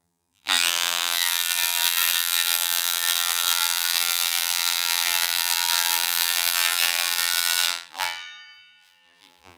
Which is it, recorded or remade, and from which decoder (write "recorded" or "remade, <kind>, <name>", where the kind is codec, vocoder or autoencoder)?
remade, vocoder, BigVGAN v2